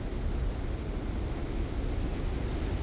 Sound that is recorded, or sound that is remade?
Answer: recorded